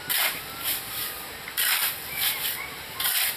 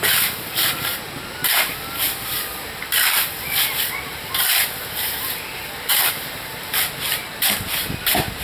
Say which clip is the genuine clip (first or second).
first